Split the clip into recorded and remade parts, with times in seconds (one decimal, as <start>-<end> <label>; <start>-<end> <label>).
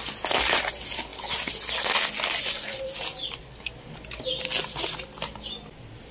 0.0-6.1 recorded